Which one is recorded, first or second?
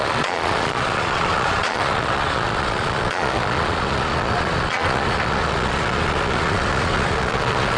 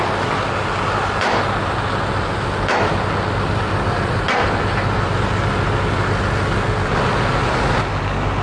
second